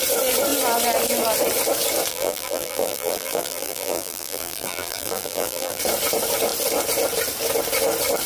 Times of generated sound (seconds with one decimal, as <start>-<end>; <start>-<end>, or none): 2.1-5.8